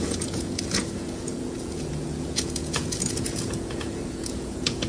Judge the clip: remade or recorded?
remade